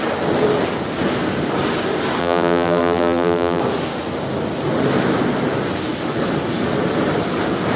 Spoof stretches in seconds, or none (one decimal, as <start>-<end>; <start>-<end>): 2.2-3.6

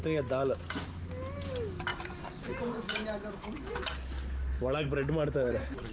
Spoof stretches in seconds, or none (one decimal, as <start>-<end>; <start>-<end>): 1.9-3.9; 4.5-5.9

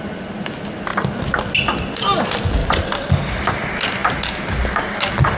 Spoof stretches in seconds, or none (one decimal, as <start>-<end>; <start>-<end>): 2.6-3.6